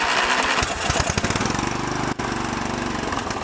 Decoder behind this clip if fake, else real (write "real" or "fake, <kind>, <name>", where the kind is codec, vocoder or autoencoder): real